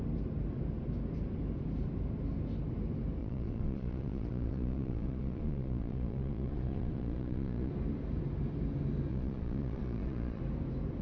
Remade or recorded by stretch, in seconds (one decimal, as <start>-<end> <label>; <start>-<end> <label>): 0.0-3.2 recorded; 3.2-7.7 remade; 7.7-9.1 recorded; 9.1-10.4 remade; 10.4-11.0 recorded